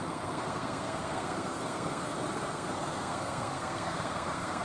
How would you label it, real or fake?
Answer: fake